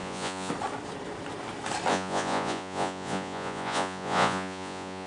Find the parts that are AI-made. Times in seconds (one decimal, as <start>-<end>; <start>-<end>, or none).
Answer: 0.0-0.5; 1.9-5.1